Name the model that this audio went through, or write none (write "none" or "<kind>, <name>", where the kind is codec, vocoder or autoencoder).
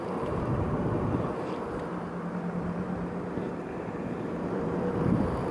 vocoder, BigVGAN v2